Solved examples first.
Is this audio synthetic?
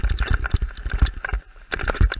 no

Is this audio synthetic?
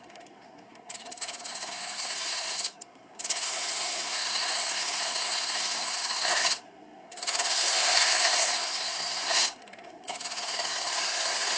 yes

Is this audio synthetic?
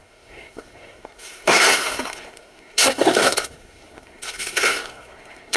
yes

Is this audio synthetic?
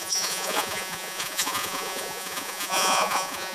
yes